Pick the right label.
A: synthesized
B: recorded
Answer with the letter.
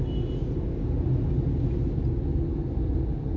B